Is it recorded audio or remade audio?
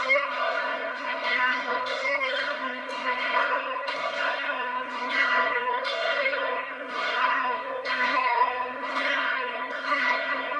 remade